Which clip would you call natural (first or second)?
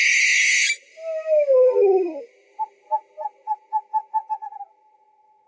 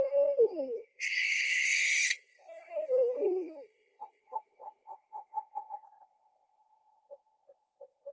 first